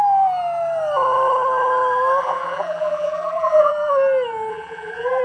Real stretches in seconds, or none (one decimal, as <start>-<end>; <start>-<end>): 0.0-2.2; 3.7-4.5